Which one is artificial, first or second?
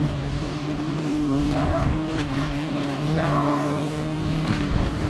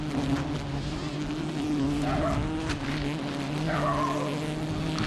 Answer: first